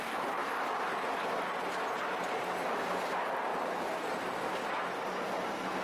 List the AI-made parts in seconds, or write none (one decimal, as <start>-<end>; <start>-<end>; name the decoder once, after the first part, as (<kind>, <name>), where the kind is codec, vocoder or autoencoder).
3.5-4.1 (vocoder, BigVGAN v2)